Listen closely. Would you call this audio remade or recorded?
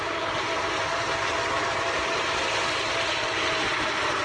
recorded